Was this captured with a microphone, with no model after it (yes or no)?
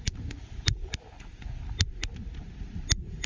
yes